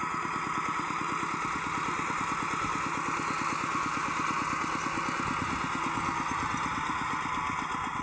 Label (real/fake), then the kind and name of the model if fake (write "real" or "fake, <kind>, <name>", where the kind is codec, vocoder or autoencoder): real